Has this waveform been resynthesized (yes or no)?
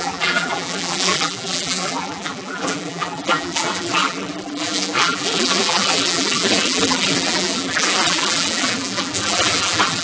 yes